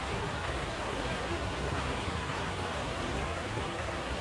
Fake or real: fake